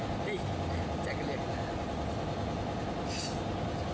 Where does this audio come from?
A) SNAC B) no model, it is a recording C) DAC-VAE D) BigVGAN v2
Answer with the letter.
B